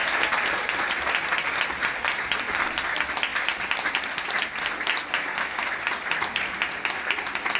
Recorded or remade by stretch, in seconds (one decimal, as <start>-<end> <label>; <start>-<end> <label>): 0.0-7.6 recorded